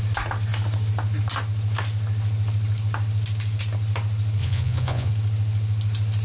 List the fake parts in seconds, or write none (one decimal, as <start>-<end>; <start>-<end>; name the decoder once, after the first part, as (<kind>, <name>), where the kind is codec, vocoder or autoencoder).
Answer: 4.4-5.1 (vocoder, Vocos)